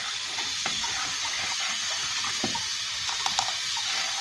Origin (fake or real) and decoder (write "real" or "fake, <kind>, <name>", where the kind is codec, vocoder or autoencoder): real